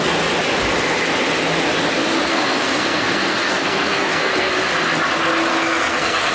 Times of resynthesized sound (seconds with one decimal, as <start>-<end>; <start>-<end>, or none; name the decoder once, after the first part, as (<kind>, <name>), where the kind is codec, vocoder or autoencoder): 2.3-4.5 (codec, SNAC); 5.5-6.3